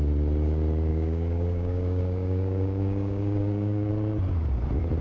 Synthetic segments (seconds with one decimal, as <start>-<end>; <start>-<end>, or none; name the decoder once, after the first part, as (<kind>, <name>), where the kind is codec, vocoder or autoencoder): 0.9-3.9 (codec, DAC)